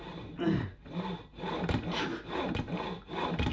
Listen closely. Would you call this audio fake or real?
real